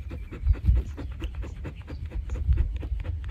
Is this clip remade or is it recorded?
remade